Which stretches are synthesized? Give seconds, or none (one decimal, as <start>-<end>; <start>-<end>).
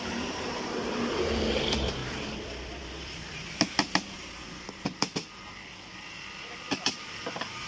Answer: 0.0-2.0; 6.6-7.7